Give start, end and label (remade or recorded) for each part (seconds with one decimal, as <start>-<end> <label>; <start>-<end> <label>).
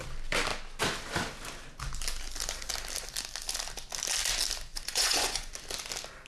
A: 0.0-4.7 recorded; 4.7-5.5 remade; 5.5-6.3 recorded